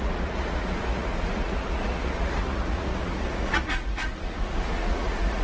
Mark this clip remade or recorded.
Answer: remade